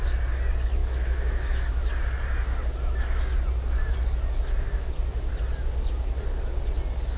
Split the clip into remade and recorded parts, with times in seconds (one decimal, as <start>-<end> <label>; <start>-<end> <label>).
0.0-0.8 recorded; 0.8-1.9 remade; 1.9-7.2 recorded